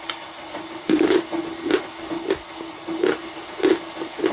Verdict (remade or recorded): recorded